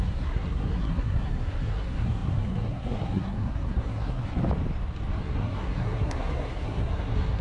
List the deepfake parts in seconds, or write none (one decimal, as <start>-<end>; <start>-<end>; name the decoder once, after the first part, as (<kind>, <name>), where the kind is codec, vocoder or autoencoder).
0.0-4.4 (codec, SNAC); 5.2-7.4